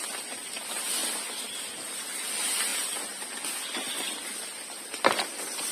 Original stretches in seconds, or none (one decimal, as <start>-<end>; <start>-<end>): 0.0-5.7

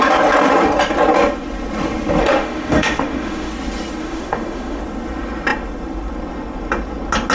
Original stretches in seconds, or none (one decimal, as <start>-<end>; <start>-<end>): 0.0-2.2; 3.5-4.0; 4.8-7.3

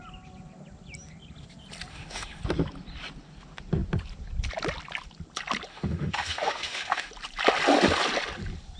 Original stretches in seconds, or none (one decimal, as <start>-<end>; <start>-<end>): 0.0-1.9; 2.4-5.7; 7.1-8.8

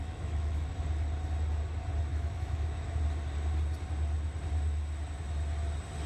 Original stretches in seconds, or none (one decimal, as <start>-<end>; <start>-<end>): 0.7-2.1; 3.0-6.1

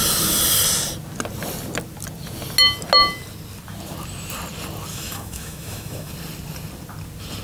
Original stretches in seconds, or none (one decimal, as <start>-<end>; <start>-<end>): 0.0-4.9; 6.1-7.4

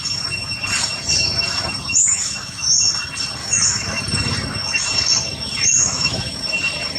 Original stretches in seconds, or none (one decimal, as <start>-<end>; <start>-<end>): 0.0-1.9; 2.7-3.4; 4.0-5.8; 6.4-7.0

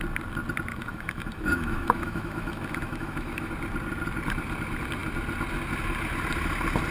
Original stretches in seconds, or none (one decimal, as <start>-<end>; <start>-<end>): 0.0-0.7; 3.5-6.9